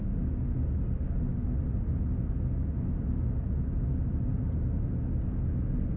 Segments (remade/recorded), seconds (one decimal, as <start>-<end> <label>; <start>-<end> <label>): 0.0-6.0 recorded